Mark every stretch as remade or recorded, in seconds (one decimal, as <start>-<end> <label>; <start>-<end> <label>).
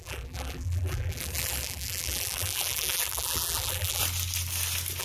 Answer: 0.0-4.0 remade; 4.0-5.0 recorded